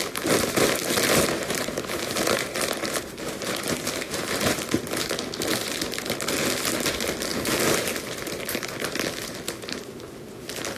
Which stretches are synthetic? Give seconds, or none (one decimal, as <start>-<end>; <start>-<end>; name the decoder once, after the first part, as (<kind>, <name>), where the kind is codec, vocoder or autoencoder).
0.8-4.6 (vocoder, BigVGAN v2)